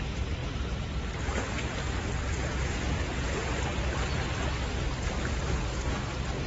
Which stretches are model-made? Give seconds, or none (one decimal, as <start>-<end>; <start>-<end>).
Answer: none